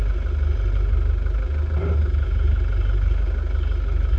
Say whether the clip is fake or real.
real